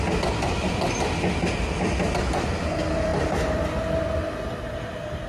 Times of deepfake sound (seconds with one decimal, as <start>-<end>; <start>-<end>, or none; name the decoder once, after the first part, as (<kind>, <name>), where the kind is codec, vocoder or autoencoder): none